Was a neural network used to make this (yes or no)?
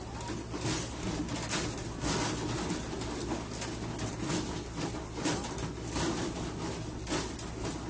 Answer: no